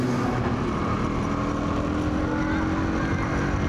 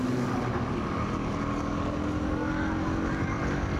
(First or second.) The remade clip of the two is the second